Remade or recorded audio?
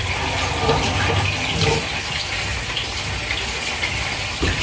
recorded